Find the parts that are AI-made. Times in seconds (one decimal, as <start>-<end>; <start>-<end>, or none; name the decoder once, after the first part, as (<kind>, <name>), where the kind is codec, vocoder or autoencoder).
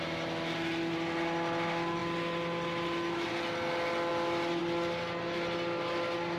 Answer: none